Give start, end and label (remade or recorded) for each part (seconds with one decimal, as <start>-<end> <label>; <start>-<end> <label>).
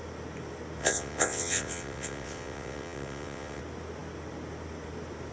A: 0.0-0.8 recorded; 0.8-3.6 remade; 3.6-5.3 recorded